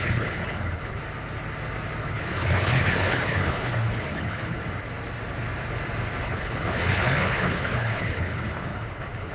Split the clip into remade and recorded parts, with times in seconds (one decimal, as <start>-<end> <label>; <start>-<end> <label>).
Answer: 0.0-1.0 remade; 1.0-2.0 recorded; 2.0-4.6 remade; 4.6-6.2 recorded; 6.2-9.3 remade